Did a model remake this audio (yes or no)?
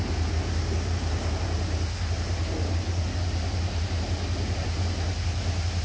no